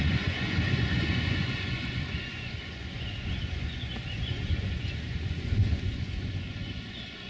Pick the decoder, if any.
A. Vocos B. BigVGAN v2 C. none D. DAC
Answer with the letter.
A